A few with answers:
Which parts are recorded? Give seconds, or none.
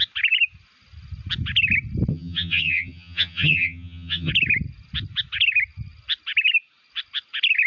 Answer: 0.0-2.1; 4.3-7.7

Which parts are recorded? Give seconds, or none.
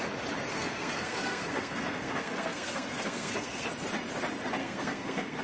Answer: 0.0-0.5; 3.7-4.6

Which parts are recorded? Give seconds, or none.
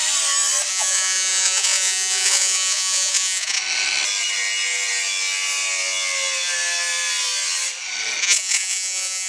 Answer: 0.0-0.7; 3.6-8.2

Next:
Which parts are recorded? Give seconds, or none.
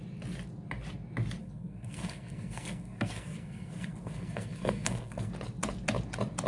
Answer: 0.0-1.4; 5.3-6.5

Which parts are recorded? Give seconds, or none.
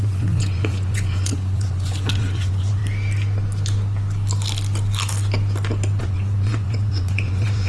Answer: 2.8-6.0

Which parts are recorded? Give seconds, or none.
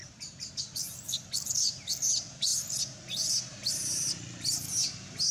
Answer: 0.0-5.3